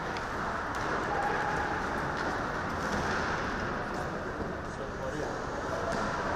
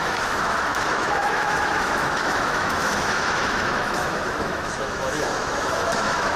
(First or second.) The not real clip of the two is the second